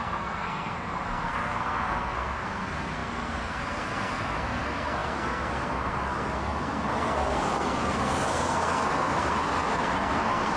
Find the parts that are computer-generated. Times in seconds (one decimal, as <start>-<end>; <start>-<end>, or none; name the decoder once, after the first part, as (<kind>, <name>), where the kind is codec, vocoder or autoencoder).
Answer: 0.0-10.6 (codec, SNAC)